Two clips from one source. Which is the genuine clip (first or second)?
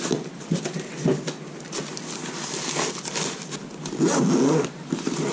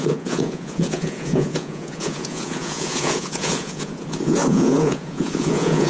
first